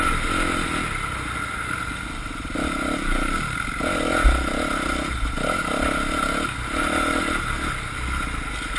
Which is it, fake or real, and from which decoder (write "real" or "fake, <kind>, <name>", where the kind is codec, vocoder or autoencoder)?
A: real